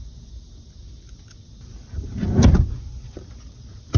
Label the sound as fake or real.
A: real